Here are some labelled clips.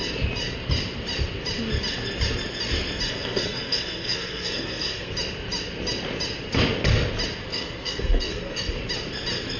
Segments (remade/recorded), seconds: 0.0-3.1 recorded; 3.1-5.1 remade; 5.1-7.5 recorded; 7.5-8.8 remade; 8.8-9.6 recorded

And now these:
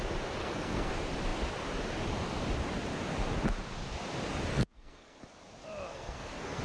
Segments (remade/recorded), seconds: 0.0-0.4 recorded; 0.4-0.9 remade; 0.9-4.5 recorded; 4.5-5.2 remade; 5.2-5.9 recorded; 5.9-6.6 remade

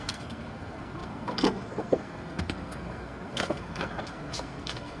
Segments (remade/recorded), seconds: 0.0-5.0 remade

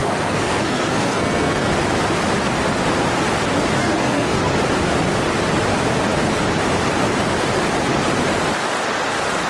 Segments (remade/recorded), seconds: 0.0-1.7 remade; 1.7-3.8 recorded; 3.8-4.4 remade; 4.4-9.5 recorded